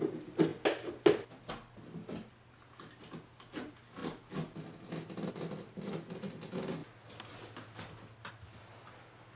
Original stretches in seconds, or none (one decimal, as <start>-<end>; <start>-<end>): 0.0-9.4